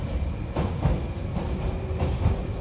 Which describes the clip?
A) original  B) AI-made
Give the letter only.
A